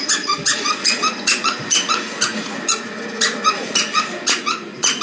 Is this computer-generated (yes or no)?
yes